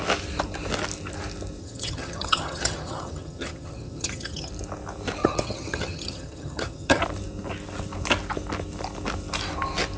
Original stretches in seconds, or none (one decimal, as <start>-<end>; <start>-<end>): 0.0-1.6; 4.5-5.2; 7.0-10.0